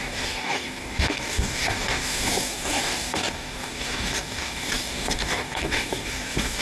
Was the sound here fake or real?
fake